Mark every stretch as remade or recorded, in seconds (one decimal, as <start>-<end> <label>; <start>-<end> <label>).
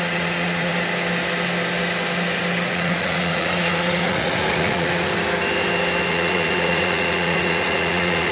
0.0-0.7 remade; 0.7-2.7 recorded; 2.7-5.1 remade; 5.1-6.1 recorded; 6.1-8.3 remade